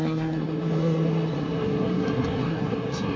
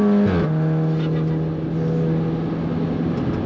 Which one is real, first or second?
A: second